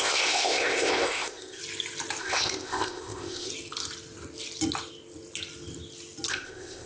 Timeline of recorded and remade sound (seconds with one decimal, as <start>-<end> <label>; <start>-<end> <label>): 0.0-1.6 remade; 1.6-2.2 recorded; 2.2-3.5 remade; 3.5-6.3 recorded; 6.3-6.9 remade